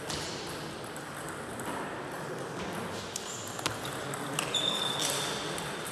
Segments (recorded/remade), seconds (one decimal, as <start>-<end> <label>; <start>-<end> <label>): 0.0-5.9 recorded